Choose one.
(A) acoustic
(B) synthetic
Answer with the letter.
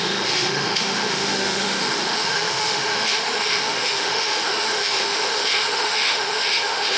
B